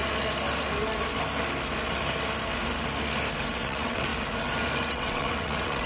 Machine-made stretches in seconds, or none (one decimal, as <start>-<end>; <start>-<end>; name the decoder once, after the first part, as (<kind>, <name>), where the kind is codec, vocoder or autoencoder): 3.5-4.1 (vocoder, WaveNeXt); 4.9-5.9